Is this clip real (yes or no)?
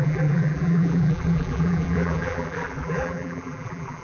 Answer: no